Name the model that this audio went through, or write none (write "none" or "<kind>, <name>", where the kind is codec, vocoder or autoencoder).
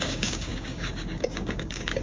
codec, DAC